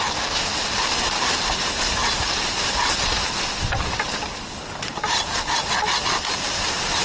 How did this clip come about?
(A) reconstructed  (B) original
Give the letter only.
B